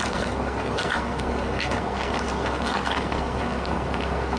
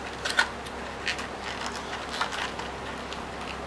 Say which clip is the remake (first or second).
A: first